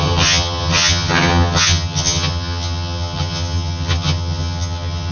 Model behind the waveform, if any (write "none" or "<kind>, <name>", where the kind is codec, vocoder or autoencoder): vocoder, HiFi-GAN